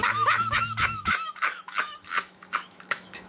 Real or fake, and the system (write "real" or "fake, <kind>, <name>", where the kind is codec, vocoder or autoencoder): fake, autoencoder, DAC-VAE